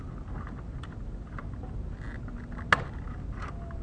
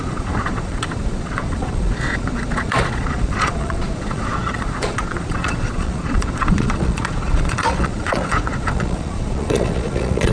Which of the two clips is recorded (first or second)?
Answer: first